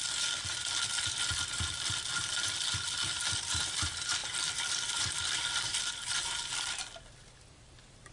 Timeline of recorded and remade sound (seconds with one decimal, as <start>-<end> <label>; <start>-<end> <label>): 0.0-0.6 remade; 0.6-2.3 recorded; 2.3-8.1 remade